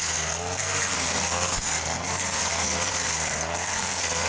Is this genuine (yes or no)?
no